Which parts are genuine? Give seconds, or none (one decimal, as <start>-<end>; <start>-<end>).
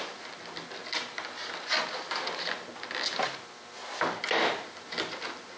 0.0-5.6